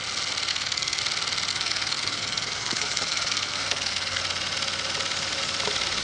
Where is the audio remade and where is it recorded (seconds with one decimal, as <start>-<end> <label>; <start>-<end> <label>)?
0.0-0.5 recorded; 0.5-1.0 remade; 1.0-1.5 recorded; 1.5-4.2 remade; 4.2-6.0 recorded